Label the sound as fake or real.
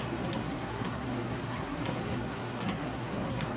fake